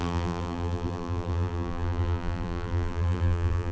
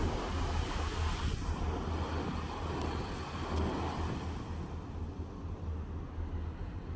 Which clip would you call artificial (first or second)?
first